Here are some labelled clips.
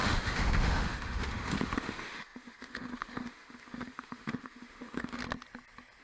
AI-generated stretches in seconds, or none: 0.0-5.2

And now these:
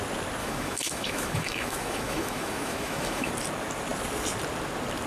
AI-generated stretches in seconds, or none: 0.4-3.3

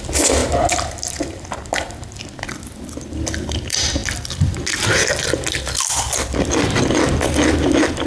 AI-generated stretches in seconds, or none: none

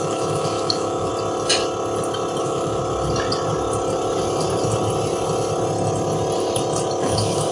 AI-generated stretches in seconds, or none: 0.0-1.1; 2.4-2.8; 7.0-7.5

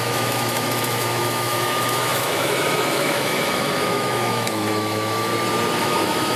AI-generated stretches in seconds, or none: 0.0-5.3; 5.8-6.4

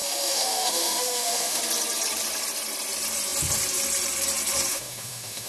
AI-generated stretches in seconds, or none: 0.0-1.6; 4.7-5.5

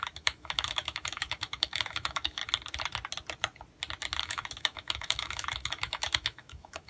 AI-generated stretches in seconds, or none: 0.0-2.4; 4.2-6.9